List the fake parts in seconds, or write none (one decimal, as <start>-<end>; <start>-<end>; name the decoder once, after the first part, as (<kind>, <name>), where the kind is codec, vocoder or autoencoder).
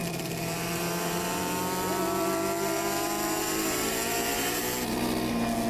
0.0-1.4 (vocoder, BigVGAN v2); 3.4-4.6